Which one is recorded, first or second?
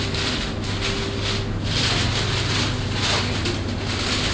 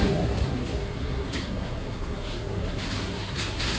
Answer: first